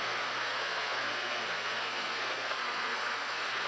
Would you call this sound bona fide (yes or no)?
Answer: no